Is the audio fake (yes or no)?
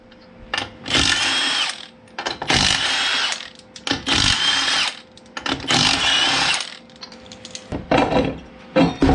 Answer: no